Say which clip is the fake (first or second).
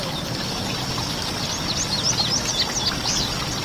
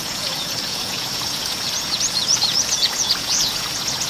second